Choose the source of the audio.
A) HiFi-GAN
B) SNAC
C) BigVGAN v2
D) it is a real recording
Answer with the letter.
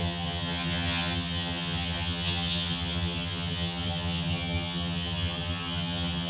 A